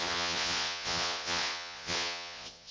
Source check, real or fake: fake